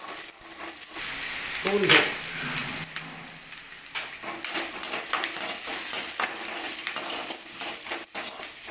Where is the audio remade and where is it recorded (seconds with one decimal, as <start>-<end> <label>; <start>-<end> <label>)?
0.0-8.7 recorded